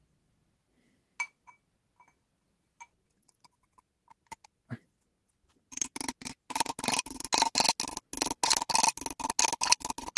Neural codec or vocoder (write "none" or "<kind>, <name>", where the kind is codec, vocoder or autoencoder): none